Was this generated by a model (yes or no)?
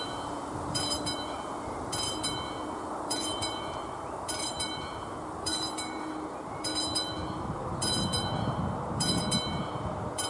yes